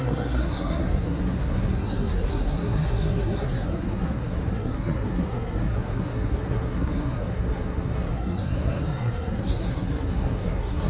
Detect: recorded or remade remade